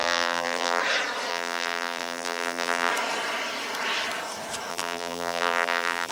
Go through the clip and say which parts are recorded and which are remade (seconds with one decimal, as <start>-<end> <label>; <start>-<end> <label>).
0.0-0.8 remade; 0.8-1.3 recorded; 1.3-2.9 remade; 2.9-4.7 recorded; 4.7-6.1 remade

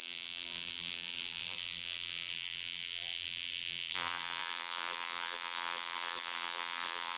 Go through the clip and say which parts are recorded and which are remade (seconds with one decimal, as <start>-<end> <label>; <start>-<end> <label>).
0.0-7.2 remade

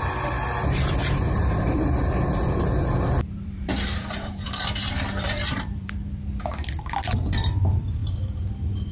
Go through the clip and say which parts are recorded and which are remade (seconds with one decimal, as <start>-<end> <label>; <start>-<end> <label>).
0.0-1.0 recorded; 1.0-5.9 remade; 5.9-8.9 recorded

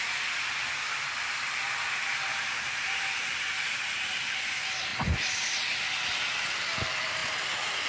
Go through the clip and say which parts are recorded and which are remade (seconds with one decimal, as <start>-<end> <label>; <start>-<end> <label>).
0.0-2.3 recorded; 2.3-4.3 remade; 4.3-7.9 recorded